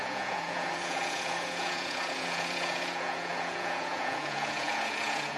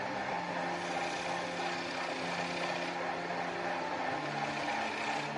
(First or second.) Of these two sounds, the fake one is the first